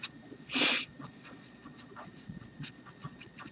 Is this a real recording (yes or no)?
no